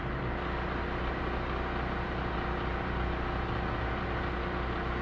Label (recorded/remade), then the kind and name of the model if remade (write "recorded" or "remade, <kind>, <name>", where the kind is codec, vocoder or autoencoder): recorded